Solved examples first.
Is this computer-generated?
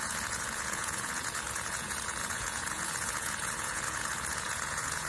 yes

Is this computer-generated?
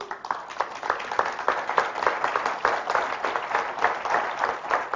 no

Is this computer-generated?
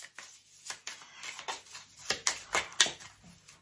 no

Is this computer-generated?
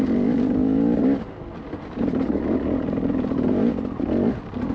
no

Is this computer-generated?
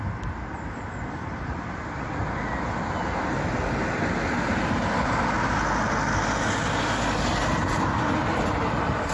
no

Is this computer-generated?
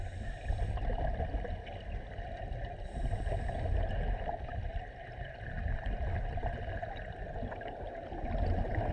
no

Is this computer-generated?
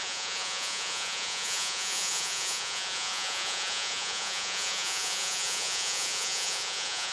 yes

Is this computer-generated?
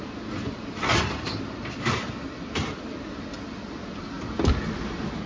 no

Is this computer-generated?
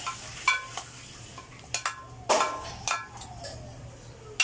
no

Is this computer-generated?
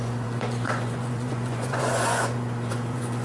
yes